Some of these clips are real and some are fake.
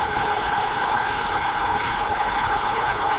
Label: fake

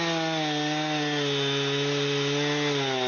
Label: real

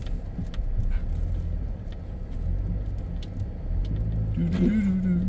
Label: real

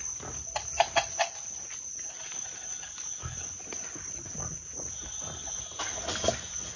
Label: real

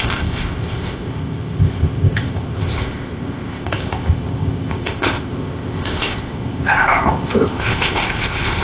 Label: fake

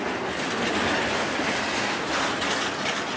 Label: real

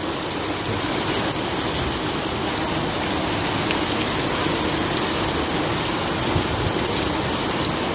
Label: real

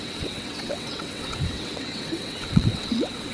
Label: fake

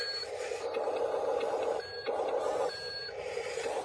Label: fake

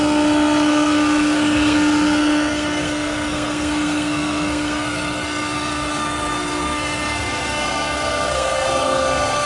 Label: fake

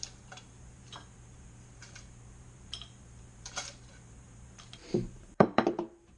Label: fake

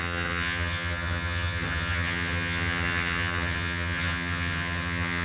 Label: fake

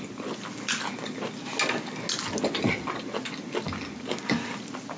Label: real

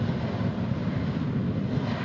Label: real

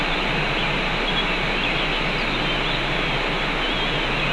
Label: real